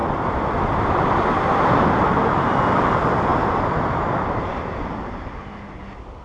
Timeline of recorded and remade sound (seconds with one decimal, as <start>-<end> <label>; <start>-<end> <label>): 0.0-1.7 remade; 1.7-3.3 recorded; 3.3-5.4 remade; 5.4-6.2 recorded